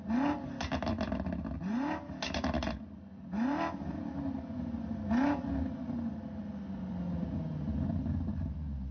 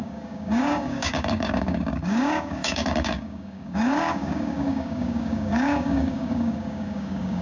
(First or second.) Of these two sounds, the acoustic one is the first